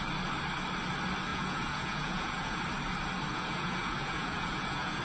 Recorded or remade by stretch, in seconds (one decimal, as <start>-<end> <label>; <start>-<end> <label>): 0.0-1.3 recorded; 1.3-2.6 remade; 2.6-3.3 recorded; 3.3-5.0 remade